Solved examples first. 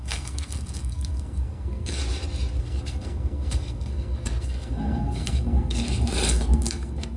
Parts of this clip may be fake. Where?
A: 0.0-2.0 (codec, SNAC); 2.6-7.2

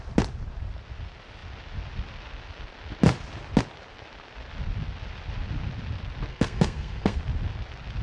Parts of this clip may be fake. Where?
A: 6.3-7.2 (codec, SNAC)